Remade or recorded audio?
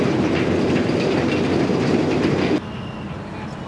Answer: recorded